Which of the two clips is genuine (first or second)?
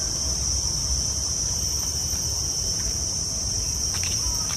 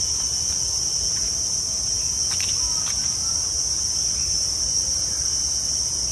second